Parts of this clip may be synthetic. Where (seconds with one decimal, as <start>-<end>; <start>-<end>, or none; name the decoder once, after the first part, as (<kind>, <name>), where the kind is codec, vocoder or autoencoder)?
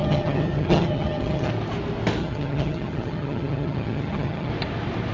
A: 0.0-1.5 (vocoder, HiFi-GAN); 2.2-4.5